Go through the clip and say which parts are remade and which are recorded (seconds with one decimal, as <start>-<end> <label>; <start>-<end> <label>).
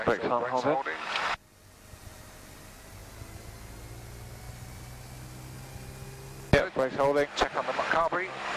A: 0.0-8.6 recorded